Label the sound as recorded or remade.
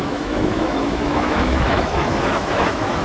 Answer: remade